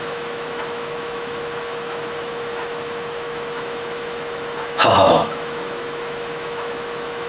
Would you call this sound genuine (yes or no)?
no